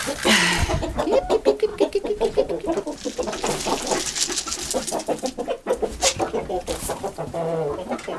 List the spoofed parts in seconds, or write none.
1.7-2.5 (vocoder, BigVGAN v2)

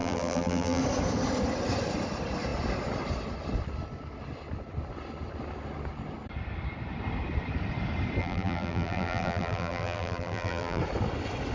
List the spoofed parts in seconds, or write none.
0.0-0.8 (vocoder, BigVGAN v2); 8.2-10.8

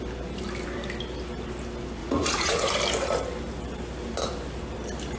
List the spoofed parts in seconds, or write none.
2.0-2.7 (vocoder, Vocos)

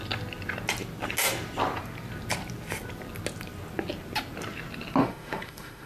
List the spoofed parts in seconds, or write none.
5.0-5.9 (autoencoder, DAC-VAE)

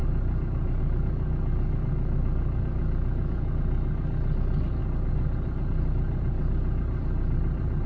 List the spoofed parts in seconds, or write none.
0.0-0.8 (vocoder, BigVGAN v2); 4.8-7.9

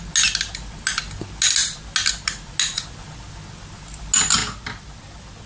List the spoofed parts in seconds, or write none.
none

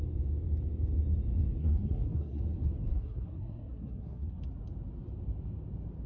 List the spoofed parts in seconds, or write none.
1.6-2.4 (codec, SNAC); 2.9-4.4